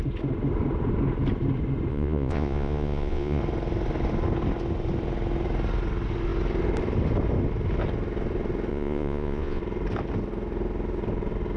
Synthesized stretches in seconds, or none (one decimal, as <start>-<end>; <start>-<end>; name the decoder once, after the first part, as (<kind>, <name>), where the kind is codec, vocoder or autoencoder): 1.9-3.4 (vocoder, Vocos); 8.7-9.6